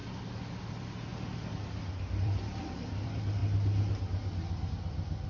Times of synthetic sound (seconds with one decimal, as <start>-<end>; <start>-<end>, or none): 0.5-1.1; 1.9-3.4; 4.7-5.3